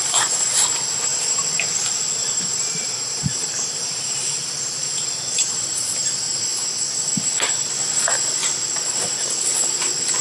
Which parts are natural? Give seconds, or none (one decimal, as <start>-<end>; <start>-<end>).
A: 0.0-1.1; 1.7-2.2; 5.5-10.2